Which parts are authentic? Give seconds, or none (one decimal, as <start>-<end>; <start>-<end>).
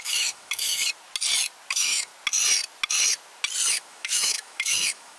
0.8-1.7; 2.1-3.7